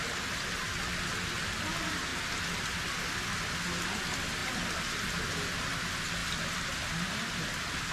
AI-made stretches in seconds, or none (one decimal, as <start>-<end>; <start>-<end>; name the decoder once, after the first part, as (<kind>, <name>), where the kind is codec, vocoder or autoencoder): none